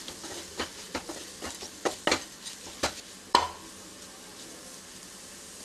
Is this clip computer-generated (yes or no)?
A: no